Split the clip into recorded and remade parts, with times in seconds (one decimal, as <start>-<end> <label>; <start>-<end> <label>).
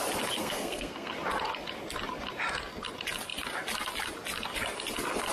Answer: 0.0-0.4 recorded; 0.4-1.1 remade; 1.1-5.3 recorded